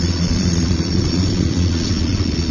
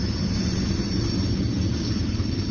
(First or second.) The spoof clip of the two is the first